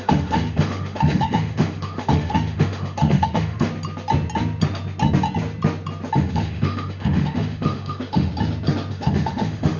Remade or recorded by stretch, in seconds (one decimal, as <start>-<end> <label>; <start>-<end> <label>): 0.0-3.7 remade; 3.7-6.2 recorded; 6.2-8.3 remade; 8.3-8.9 recorded; 8.9-9.8 remade

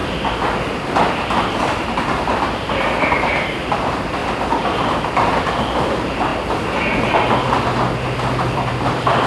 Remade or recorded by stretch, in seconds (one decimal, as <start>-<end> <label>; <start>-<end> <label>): 0.0-1.6 recorded; 1.6-4.2 remade; 4.2-5.1 recorded; 5.1-6.3 remade; 6.3-8.5 recorded; 8.5-9.3 remade

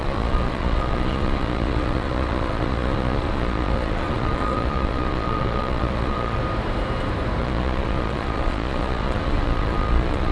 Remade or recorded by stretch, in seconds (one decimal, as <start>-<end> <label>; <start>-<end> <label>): 0.0-6.4 remade; 6.4-7.4 recorded; 7.4-10.3 remade